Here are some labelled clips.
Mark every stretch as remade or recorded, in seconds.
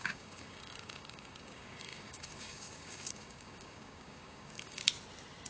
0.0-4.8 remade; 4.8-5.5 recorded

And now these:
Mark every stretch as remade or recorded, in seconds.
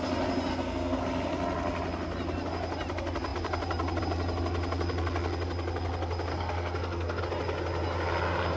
0.0-0.5 recorded; 0.5-1.0 remade; 1.0-6.3 recorded; 6.3-7.2 remade; 7.2-8.6 recorded